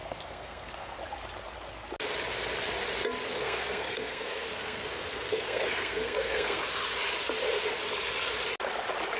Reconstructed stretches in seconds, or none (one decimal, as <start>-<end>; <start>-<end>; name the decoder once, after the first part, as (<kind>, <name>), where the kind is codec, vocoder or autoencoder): 0.0-1.0 (codec, SNAC); 3.3-6.6